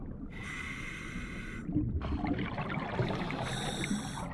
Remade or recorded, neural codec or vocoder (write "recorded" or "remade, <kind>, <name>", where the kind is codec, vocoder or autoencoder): recorded